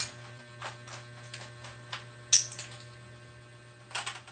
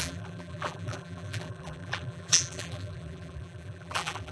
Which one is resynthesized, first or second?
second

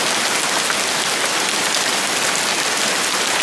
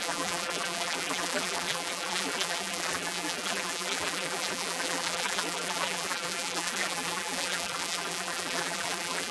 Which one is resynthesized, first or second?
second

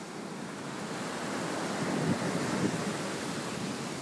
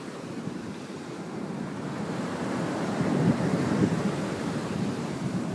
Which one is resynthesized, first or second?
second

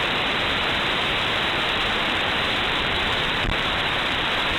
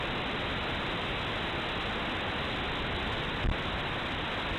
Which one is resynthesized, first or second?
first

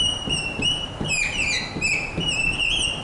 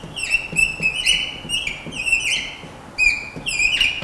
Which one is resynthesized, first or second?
first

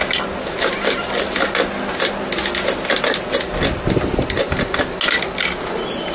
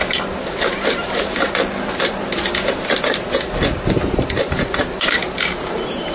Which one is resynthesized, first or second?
second